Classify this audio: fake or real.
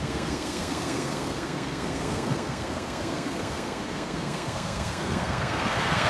fake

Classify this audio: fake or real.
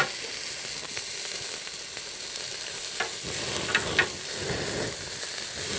real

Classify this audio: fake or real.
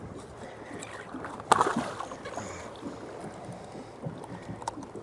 real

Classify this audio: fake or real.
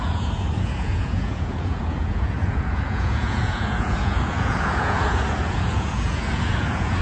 fake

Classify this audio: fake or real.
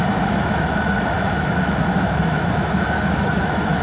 fake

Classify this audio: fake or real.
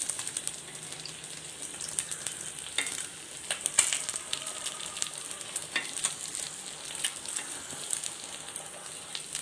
real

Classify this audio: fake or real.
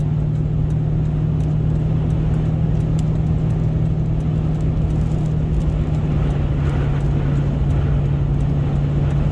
real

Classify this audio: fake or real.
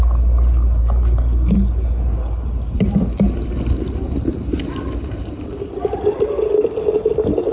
real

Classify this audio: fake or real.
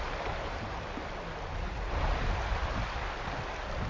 real